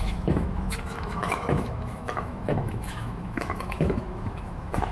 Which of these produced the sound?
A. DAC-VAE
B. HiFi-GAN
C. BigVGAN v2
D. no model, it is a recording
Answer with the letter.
A